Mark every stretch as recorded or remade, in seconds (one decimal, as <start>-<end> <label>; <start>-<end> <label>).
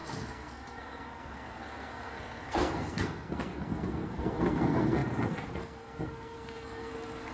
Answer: 0.0-7.3 remade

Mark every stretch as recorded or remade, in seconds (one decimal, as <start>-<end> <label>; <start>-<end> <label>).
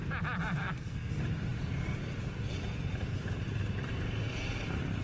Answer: 0.0-0.6 recorded; 0.6-1.1 remade; 1.1-5.0 recorded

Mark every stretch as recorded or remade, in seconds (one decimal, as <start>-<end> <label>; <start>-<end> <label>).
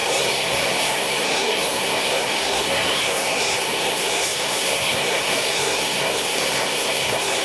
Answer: 0.0-7.4 remade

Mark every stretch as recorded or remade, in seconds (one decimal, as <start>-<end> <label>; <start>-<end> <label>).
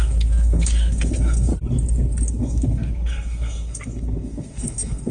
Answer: 0.0-1.5 remade; 1.5-2.4 recorded; 2.4-5.1 remade